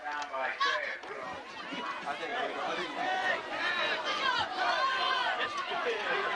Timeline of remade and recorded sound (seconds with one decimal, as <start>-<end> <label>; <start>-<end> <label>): 0.0-2.3 recorded; 2.3-6.4 remade